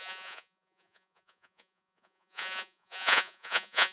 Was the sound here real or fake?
fake